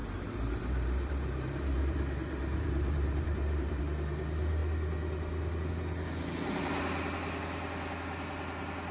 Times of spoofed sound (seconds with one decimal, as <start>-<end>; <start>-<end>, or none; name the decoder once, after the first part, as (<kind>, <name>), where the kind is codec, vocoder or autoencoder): 0.0-3.8 (vocoder, BigVGAN v2)